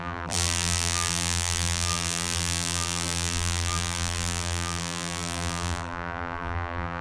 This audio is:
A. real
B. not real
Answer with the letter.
B